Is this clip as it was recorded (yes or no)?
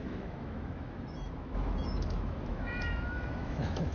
no